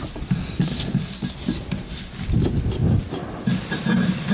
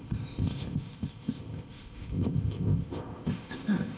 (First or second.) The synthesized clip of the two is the second